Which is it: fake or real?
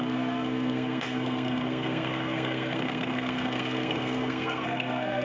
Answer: fake